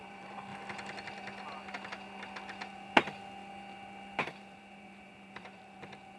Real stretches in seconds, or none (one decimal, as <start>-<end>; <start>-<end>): 0.5-4.2